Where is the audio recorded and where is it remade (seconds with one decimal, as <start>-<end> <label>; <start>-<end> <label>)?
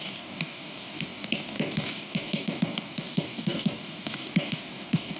0.0-5.2 remade